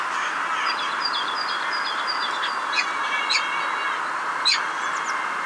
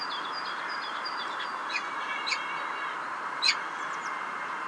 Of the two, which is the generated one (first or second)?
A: second